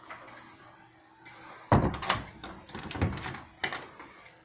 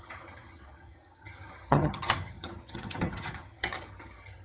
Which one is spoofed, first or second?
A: second